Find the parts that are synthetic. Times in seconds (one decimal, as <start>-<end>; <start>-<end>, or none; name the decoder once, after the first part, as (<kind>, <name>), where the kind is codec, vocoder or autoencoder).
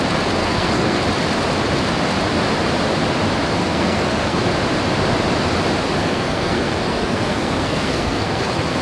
0.4-1.0 (codec, SNAC); 3.6-4.4; 6.0-8.8